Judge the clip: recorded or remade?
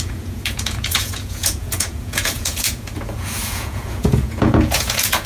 remade